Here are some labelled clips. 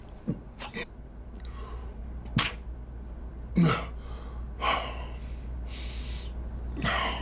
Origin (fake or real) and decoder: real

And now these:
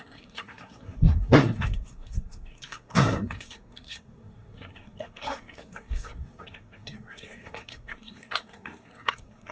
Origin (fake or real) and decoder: fake, codec, SNAC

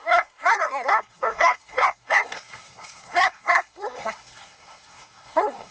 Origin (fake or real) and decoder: fake, codec, SNAC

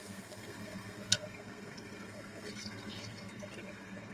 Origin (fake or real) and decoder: fake, codec, SNAC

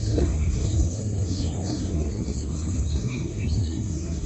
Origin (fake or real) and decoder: fake, codec, SNAC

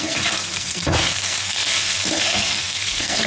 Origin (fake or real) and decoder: fake, codec, SNAC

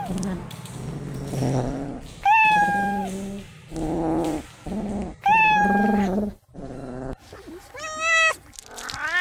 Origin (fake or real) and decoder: real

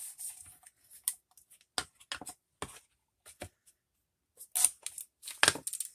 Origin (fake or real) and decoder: real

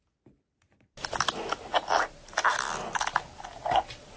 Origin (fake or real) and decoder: real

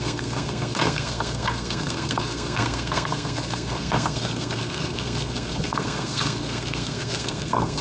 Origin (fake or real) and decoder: fake, codec, SNAC